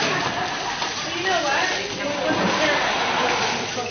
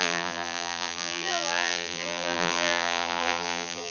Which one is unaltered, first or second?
first